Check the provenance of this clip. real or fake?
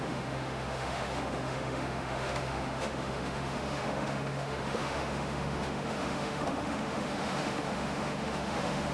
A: fake